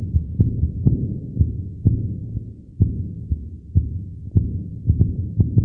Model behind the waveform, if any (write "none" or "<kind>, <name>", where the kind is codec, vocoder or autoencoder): none